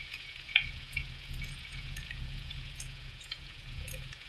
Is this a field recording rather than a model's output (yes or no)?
no